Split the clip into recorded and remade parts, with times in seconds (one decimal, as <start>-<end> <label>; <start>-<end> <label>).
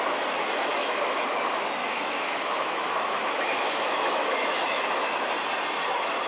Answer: 0.0-0.7 recorded; 0.7-1.3 remade; 1.3-1.8 recorded; 1.8-5.0 remade; 5.0-6.3 recorded